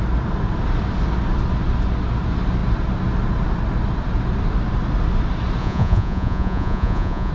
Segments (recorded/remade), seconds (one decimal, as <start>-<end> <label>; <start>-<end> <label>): 0.0-5.6 recorded; 5.6-7.3 remade